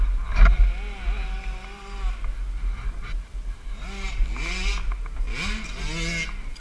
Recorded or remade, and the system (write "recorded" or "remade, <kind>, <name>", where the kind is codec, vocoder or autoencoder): recorded